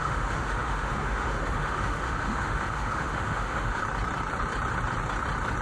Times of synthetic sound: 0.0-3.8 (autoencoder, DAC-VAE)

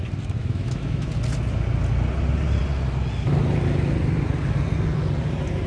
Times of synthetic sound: 0.4-1.1 (autoencoder, DAC-VAE)

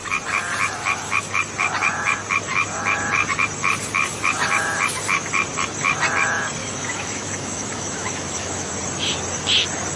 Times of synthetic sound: 6.6-8.7 (autoencoder, DAC-VAE)

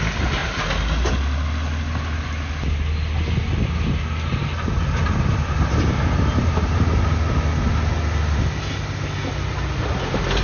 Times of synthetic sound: none

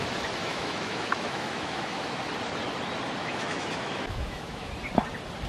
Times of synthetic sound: 0.4-2.2 (autoencoder, DAC-VAE); 3.2-4.7